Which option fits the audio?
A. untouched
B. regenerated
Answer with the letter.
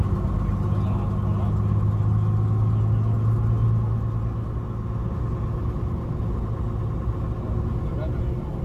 A